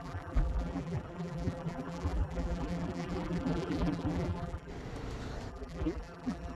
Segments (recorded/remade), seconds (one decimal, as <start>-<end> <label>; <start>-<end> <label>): 0.0-4.7 remade; 4.7-5.5 recorded; 5.5-6.6 remade